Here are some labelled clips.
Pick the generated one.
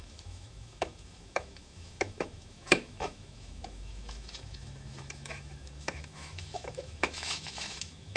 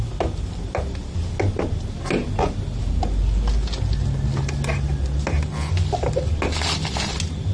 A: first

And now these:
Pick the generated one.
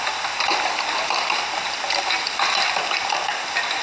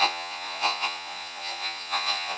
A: second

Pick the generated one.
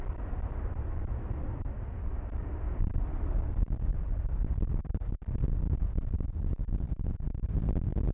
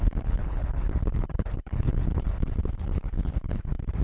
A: second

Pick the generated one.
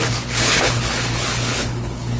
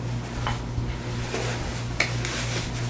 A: first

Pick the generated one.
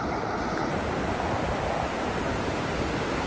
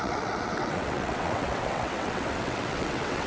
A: second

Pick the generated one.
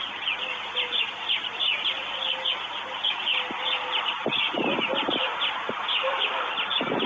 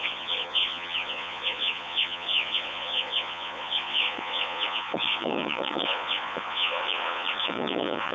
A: second